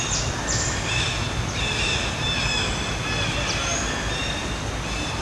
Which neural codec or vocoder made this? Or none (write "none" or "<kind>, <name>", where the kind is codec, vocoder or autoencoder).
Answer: none